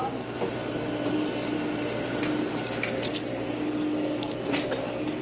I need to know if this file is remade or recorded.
recorded